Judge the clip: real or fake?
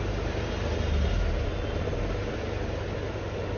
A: real